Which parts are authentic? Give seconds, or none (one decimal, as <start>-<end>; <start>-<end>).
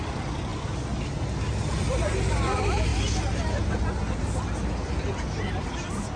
0.5-1.6; 2.9-4.8